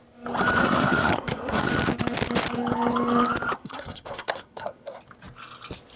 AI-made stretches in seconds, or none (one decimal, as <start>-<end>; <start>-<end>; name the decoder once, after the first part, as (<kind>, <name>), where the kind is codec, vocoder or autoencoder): 0.6-1.7 (codec, SNAC); 3.6-5.0